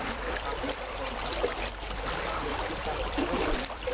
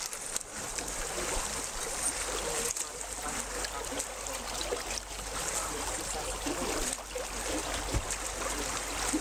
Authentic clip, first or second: second